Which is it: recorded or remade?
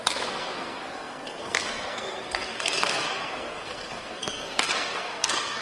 remade